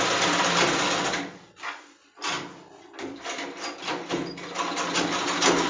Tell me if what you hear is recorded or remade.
recorded